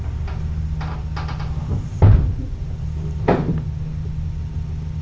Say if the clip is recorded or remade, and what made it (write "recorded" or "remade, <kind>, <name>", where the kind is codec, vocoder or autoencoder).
recorded